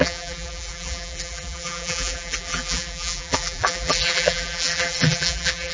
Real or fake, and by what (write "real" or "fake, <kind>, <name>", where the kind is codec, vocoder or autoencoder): fake, vocoder, BigVGAN v2